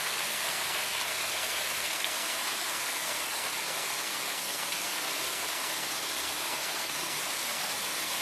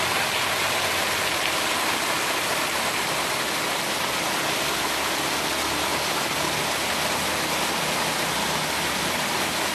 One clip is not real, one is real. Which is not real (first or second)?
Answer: first